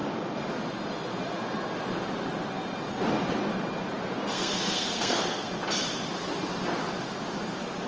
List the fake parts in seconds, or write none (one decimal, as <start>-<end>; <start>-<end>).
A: 4.3-5.5